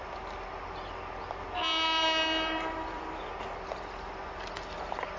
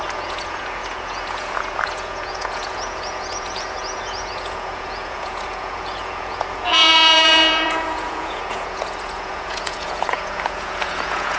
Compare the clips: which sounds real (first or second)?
first